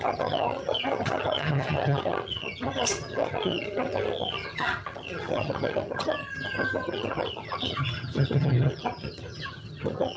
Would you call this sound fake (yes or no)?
yes